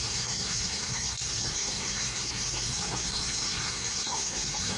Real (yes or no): no